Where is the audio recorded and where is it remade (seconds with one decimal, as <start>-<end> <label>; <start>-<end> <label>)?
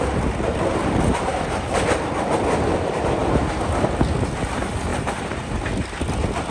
0.0-0.8 recorded; 0.8-1.7 remade; 1.7-3.2 recorded; 3.2-3.7 remade; 3.7-4.9 recorded; 4.9-5.6 remade; 5.6-6.5 recorded